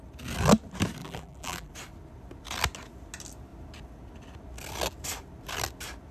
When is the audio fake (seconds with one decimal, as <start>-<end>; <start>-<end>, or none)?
1.0-1.7